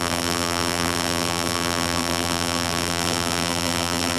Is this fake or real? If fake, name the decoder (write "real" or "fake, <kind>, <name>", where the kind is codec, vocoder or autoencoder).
fake, vocoder, BigVGAN v2